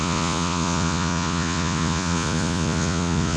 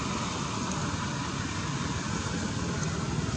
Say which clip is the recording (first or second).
second